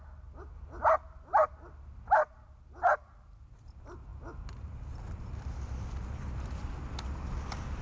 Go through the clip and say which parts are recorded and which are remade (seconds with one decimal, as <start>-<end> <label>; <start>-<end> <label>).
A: 0.0-7.8 recorded